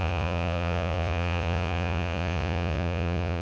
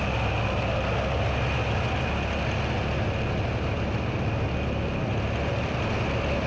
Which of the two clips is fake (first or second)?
first